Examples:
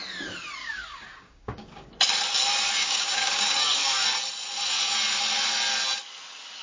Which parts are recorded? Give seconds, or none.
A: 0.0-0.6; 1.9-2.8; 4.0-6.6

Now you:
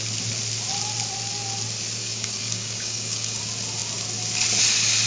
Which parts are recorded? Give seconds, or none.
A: 0.0-2.0; 3.4-5.1